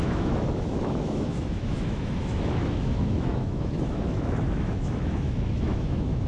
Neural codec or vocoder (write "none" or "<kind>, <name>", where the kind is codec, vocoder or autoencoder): autoencoder, DAC-VAE